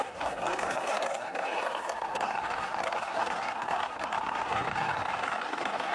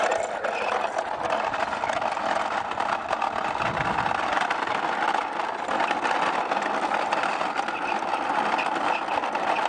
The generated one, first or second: first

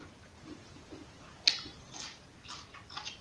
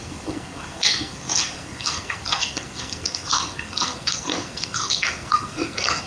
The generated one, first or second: second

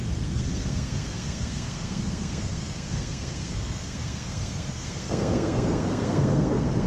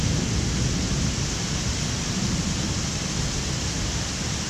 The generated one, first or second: first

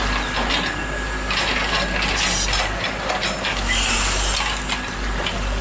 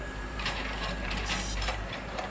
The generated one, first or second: second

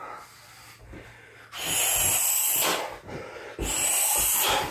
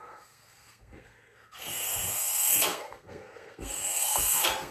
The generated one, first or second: second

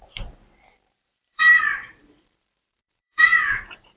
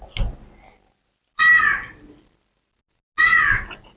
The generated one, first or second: first